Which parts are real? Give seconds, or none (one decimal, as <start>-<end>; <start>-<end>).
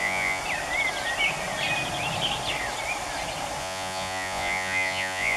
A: 0.4-3.6